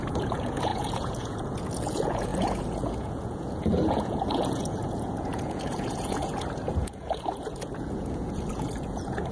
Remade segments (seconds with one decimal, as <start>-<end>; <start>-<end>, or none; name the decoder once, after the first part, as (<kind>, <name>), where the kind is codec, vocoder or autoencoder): 0.0-9.3 (vocoder, Vocos)